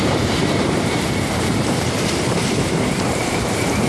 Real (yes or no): no